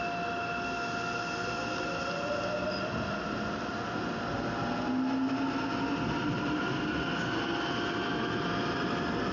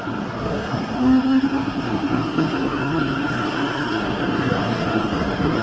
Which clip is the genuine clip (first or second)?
first